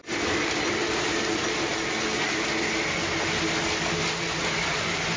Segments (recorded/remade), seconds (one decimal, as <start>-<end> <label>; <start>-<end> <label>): 0.0-5.2 recorded

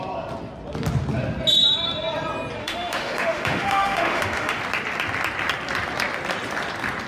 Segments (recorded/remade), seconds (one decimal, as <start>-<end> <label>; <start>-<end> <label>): 0.0-2.6 recorded; 2.6-4.6 remade; 4.6-7.1 recorded